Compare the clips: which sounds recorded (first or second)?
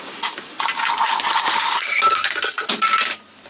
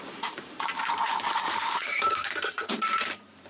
first